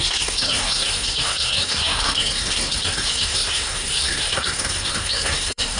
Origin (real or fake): fake